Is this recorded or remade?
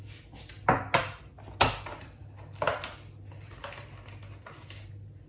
recorded